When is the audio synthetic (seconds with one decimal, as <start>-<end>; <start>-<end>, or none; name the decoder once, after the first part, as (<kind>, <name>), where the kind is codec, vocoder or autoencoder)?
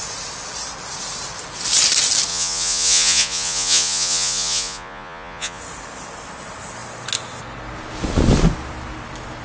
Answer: 2.3-5.6 (vocoder, Vocos)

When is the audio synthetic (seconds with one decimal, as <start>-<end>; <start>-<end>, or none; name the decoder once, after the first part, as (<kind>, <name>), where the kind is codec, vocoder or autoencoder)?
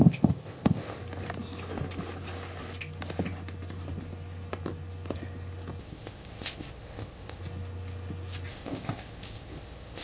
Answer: 0.0-1.0 (codec, ZipCodec); 5.8-7.4; 8.5-10.0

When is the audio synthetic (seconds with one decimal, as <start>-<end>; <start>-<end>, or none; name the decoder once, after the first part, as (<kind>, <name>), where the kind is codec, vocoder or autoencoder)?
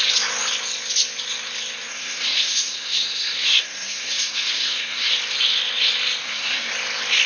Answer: 1.9-5.1 (codec, SNAC); 6.2-6.7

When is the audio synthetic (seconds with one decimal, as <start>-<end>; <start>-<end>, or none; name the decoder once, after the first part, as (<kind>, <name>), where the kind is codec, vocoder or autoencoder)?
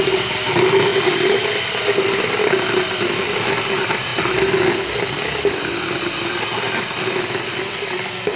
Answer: none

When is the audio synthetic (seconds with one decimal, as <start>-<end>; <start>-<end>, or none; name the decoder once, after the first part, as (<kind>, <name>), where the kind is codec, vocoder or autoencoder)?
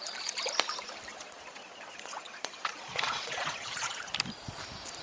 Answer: 1.1-4.1 (vocoder, Vocos)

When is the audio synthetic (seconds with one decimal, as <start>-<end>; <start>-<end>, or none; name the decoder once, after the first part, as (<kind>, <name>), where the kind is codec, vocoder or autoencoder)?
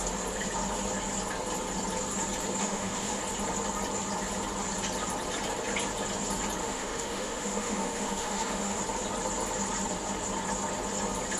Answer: 2.6-3.2 (autoencoder, DAC-VAE); 6.6-8.8